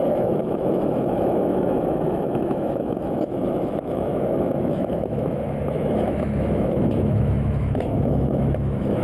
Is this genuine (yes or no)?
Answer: no